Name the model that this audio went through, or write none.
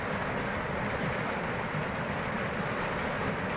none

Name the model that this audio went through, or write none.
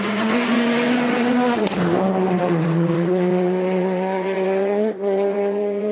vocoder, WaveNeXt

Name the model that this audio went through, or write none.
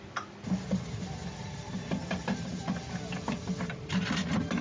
none